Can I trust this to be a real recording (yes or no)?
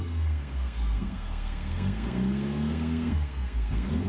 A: no